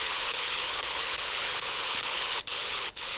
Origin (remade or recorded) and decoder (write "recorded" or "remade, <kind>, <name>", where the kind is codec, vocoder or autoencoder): remade, codec, HILCodec